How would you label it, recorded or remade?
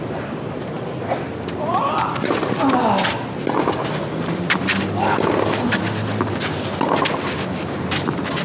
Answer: recorded